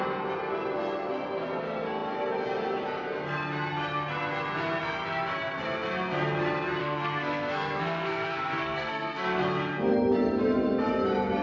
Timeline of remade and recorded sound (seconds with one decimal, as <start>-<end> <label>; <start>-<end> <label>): 0.0-6.8 recorded; 6.8-9.4 remade; 9.4-11.4 recorded